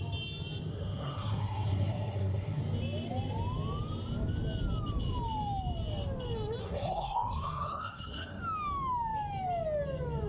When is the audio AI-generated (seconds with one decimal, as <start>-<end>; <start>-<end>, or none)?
0.7-2.6; 6.6-8.4

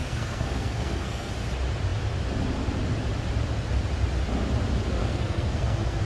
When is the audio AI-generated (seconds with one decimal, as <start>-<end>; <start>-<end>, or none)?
0.0-1.3; 5.0-6.0

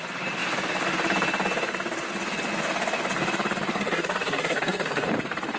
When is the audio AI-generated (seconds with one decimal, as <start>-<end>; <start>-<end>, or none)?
3.7-5.1